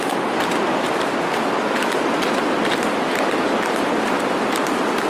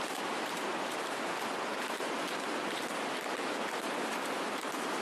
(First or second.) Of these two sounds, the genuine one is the first